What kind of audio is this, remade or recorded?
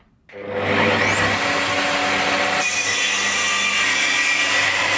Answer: recorded